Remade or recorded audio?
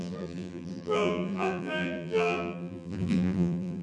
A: remade